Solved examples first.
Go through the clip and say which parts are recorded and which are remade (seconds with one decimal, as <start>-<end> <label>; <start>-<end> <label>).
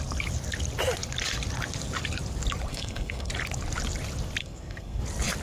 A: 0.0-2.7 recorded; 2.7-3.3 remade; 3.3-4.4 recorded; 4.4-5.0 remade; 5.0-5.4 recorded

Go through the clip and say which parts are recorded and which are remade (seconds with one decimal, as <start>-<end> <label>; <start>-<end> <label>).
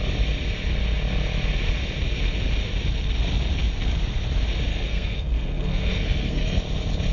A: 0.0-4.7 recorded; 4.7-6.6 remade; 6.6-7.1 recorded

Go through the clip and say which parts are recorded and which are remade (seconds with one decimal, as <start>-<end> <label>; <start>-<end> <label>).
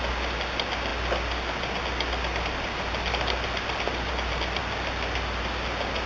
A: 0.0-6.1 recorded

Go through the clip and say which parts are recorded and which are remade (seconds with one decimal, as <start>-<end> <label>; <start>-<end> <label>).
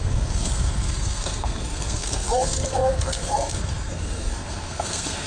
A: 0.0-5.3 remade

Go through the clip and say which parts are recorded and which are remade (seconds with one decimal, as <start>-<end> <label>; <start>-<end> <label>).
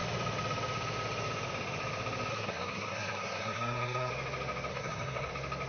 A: 0.0-2.3 recorded; 2.3-4.1 remade; 4.1-4.7 recorded; 4.7-5.3 remade; 5.3-5.7 recorded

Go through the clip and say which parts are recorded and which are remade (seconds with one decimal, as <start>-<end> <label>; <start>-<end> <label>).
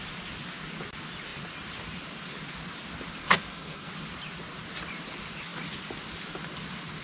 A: 0.0-3.2 recorded; 3.2-3.9 remade; 3.9-7.0 recorded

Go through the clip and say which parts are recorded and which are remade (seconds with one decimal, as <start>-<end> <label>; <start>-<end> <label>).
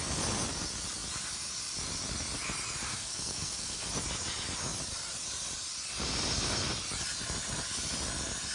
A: 0.0-2.9 recorded; 2.9-3.9 remade; 3.9-8.5 recorded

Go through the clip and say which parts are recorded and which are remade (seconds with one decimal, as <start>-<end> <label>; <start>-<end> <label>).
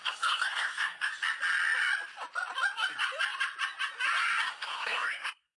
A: 0.0-1.1 remade; 1.1-4.5 recorded; 4.5-5.6 remade